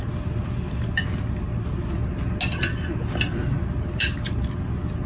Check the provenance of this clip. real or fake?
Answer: real